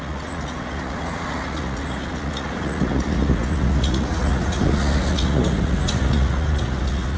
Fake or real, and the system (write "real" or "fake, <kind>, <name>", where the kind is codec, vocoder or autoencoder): fake, vocoder, Vocos